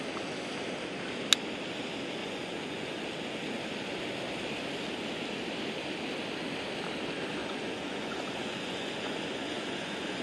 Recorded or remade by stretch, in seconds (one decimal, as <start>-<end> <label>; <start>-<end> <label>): 0.0-2.2 recorded; 2.2-3.0 remade; 3.0-7.4 recorded; 7.4-10.2 remade